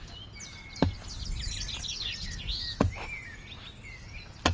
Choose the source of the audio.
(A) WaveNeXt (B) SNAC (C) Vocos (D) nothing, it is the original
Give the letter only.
D